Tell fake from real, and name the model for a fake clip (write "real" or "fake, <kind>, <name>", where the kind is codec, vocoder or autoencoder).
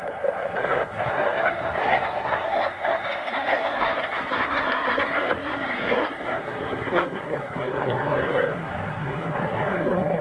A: fake, codec, SNAC